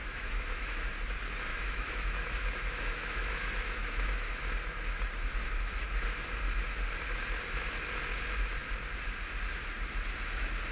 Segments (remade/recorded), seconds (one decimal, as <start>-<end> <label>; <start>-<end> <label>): 0.0-0.9 remade; 0.9-1.5 recorded; 1.5-4.4 remade; 4.4-10.7 recorded